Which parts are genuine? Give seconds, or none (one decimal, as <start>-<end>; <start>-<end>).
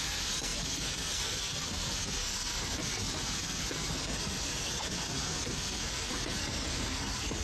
none